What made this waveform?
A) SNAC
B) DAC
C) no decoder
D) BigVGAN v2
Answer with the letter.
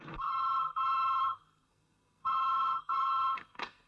A